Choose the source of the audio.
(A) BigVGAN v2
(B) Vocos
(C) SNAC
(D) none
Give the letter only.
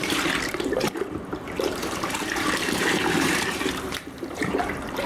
A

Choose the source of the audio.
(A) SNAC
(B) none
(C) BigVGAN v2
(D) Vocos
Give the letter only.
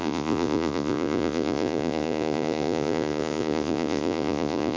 D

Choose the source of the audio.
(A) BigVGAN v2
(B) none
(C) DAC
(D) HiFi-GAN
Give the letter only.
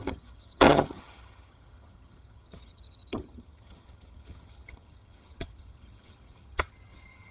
D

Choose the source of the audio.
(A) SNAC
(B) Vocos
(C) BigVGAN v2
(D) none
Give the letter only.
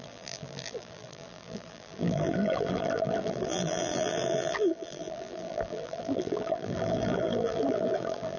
C